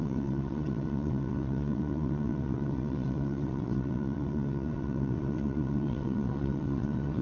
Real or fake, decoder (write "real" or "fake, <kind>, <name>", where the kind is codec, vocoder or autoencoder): fake, vocoder, WaveNeXt